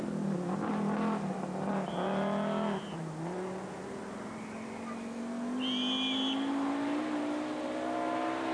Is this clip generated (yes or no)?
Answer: no